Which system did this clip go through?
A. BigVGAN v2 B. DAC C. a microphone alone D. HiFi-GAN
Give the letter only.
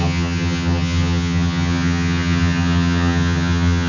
D